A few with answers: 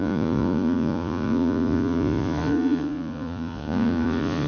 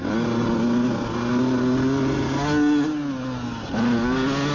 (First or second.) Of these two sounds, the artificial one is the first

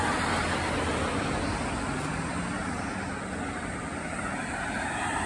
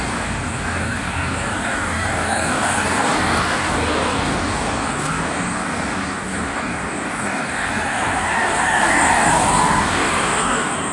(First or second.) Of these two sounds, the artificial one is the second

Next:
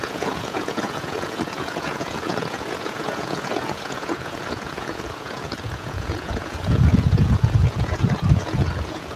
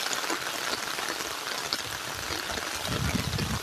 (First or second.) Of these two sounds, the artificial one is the first